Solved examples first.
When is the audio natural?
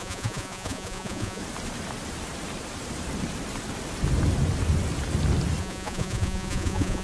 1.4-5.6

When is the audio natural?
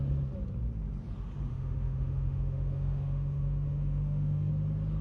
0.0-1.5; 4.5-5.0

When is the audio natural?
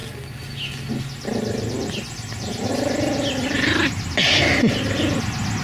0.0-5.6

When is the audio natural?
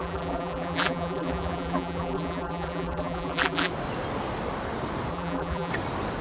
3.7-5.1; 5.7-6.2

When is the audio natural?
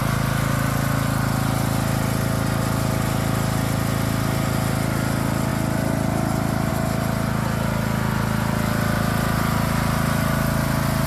0.0-11.1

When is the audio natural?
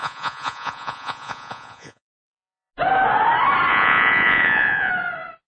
2.7-3.7; 4.9-5.5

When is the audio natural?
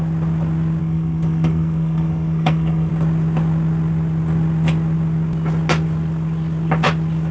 0.0-0.8; 2.9-7.3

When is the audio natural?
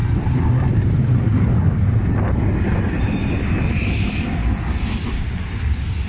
0.0-6.1